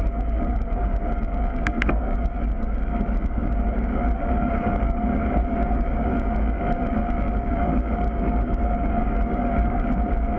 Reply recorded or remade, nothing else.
remade